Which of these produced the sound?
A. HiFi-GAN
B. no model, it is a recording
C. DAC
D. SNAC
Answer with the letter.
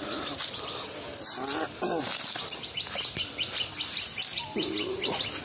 B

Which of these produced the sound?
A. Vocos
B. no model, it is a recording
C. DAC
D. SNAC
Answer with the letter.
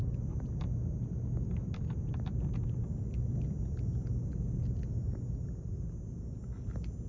B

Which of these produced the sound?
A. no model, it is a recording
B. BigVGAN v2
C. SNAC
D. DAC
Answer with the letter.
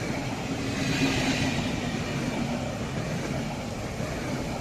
A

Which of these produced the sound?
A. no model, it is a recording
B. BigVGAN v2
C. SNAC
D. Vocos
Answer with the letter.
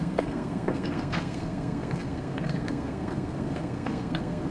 C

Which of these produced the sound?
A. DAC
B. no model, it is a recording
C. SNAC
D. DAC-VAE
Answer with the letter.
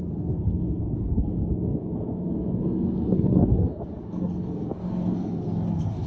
C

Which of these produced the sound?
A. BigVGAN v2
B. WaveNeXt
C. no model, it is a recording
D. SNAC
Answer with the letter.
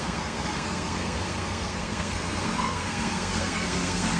D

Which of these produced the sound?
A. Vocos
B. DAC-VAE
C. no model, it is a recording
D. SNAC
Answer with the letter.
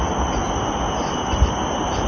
C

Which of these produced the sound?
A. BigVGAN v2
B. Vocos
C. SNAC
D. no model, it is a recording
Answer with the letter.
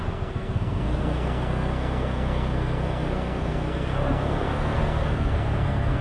C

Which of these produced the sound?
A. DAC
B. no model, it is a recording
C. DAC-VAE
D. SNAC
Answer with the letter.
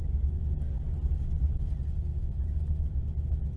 B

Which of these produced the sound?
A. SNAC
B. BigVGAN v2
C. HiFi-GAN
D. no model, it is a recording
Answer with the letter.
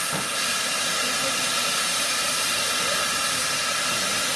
D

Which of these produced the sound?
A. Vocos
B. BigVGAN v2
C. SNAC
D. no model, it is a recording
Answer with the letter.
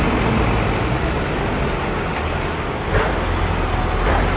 D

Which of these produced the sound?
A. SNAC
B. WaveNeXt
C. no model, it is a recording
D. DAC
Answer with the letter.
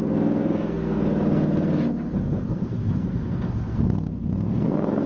A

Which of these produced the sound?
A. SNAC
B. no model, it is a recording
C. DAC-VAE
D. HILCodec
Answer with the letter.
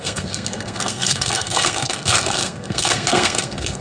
A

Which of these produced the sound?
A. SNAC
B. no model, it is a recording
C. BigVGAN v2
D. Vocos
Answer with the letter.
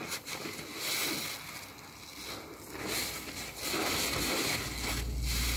B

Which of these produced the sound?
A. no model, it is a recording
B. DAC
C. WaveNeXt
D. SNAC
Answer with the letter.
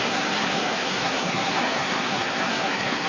D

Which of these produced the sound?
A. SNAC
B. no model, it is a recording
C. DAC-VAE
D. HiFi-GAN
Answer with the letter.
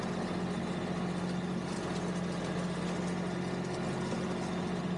B